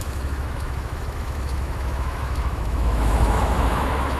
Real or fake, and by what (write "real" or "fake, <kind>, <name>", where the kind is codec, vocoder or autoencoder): fake, autoencoder, DAC-VAE